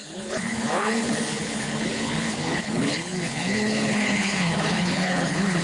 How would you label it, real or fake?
fake